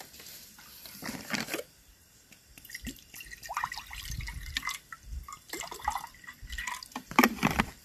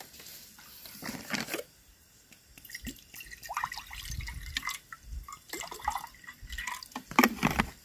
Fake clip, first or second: first